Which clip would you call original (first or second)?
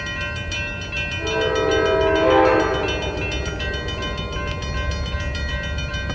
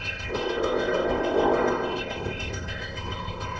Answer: first